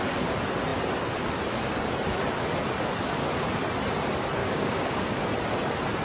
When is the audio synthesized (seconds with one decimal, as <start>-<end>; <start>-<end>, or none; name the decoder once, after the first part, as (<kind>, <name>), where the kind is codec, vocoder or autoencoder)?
4.4-5.2 (codec, DAC)